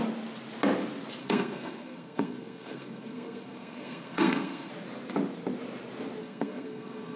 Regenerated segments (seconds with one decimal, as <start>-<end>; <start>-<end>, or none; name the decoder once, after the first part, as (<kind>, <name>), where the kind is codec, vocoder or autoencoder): 1.2-4.7 (codec, SNAC); 6.2-7.2